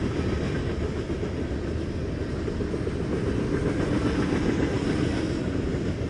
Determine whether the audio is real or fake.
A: real